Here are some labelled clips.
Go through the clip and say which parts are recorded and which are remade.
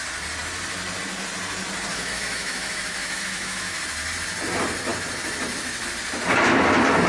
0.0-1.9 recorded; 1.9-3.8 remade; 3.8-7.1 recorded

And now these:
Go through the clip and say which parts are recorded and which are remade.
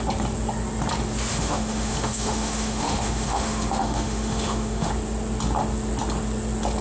0.0-1.3 recorded; 1.3-4.9 remade; 4.9-6.8 recorded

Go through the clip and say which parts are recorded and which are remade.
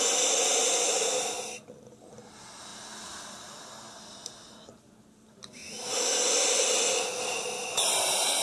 0.0-8.4 recorded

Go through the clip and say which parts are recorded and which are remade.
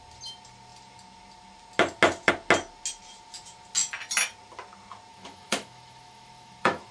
0.0-5.1 recorded; 5.1-6.9 remade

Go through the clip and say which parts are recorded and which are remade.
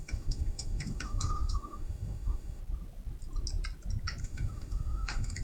0.0-2.6 remade; 2.6-4.2 recorded; 4.2-5.4 remade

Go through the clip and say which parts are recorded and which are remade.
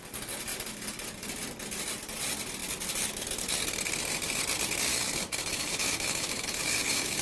0.0-4.9 recorded; 4.9-7.2 remade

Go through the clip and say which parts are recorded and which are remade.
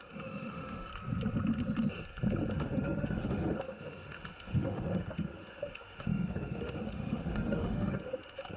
0.0-0.9 remade; 0.9-2.5 recorded; 2.5-8.6 remade